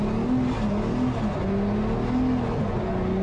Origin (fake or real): real